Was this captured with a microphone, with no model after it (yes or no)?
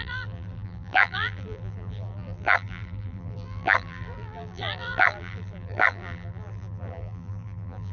no